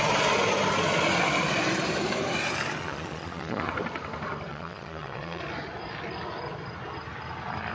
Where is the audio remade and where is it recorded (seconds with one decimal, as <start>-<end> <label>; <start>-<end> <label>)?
0.0-2.8 recorded; 2.8-3.7 remade; 3.7-4.5 recorded; 4.5-5.4 remade; 5.4-7.7 recorded